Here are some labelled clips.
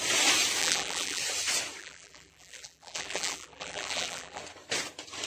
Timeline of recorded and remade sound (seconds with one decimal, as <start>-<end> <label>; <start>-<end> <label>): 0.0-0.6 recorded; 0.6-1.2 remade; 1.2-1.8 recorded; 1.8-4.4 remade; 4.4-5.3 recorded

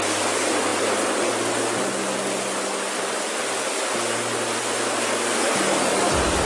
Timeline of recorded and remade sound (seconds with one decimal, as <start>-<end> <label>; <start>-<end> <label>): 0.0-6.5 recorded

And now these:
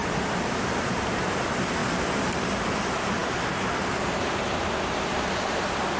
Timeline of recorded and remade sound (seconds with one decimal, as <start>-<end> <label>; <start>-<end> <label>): 0.0-1.3 remade; 1.3-1.8 recorded; 1.8-2.4 remade; 2.4-6.0 recorded

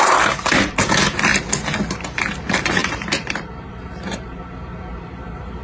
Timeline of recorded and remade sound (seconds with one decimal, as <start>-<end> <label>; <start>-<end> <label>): 0.0-1.3 remade; 1.3-1.8 recorded; 1.8-5.6 remade

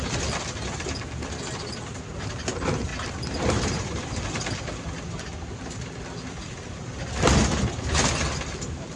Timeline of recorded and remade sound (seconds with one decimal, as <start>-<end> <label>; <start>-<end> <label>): 0.0-2.9 recorded; 2.9-4.2 remade; 4.2-9.0 recorded

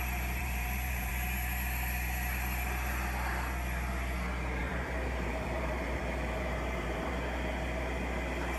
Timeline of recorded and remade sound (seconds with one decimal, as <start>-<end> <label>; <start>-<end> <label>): 0.0-0.4 recorded; 0.4-1.1 remade; 1.1-4.6 recorded; 4.6-7.1 remade; 7.1-8.6 recorded

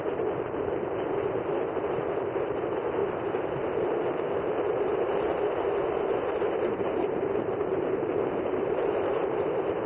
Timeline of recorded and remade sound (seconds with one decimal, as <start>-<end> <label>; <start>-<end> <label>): 0.0-3.0 remade; 3.0-3.6 recorded; 3.6-9.9 remade